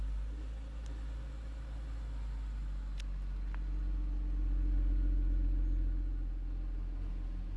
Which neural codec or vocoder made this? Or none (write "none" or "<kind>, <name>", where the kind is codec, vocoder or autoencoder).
none